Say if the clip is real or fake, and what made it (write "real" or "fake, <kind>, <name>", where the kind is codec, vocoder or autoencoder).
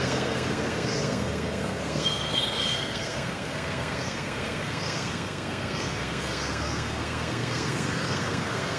fake, codec, SNAC